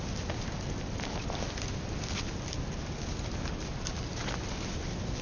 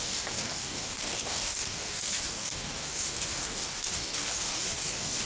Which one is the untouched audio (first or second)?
first